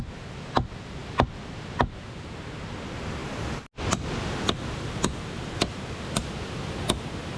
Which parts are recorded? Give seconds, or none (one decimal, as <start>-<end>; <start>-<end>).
0.0-7.4